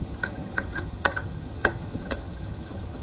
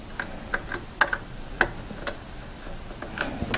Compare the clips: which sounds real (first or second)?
second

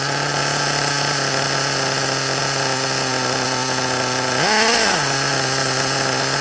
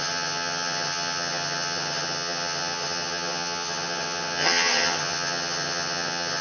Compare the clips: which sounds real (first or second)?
first